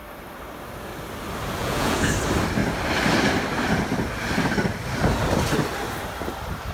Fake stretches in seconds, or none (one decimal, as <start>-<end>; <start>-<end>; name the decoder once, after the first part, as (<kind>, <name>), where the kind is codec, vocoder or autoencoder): 1.6-2.1 (vocoder, Vocos)